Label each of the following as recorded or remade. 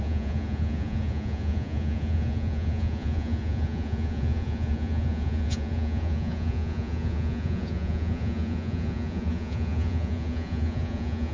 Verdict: remade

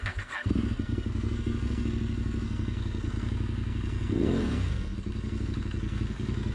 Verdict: remade